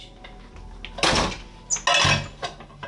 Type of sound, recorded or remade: recorded